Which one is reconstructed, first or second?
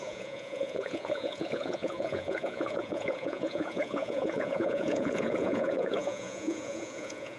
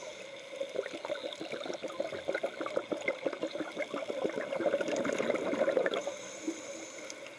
first